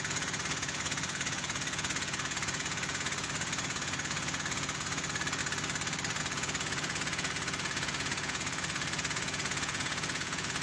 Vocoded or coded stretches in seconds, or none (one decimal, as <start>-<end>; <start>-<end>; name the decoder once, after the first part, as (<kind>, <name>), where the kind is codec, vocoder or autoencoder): 0.0-5.4 (vocoder, Vocos); 6.2-10.6